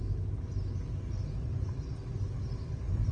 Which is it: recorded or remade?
recorded